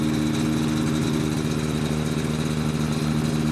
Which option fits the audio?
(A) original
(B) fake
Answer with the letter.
A